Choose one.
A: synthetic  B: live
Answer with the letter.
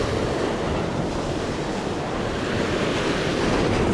B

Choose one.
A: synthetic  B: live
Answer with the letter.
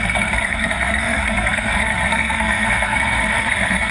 A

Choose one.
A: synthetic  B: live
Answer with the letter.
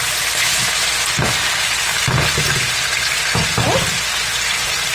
B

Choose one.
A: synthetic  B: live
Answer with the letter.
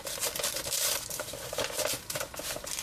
B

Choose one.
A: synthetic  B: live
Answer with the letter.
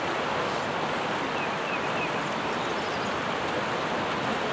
B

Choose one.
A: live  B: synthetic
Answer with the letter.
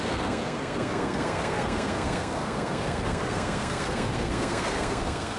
B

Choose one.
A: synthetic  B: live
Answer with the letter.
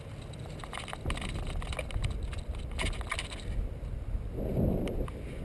B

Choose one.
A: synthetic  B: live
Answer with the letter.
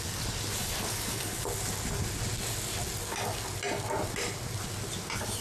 B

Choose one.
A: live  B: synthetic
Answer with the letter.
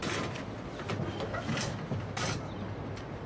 A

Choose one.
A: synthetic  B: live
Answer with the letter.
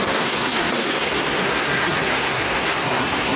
A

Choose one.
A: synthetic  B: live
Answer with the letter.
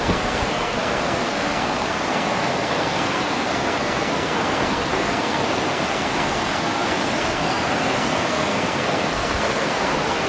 A